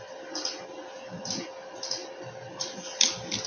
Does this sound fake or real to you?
real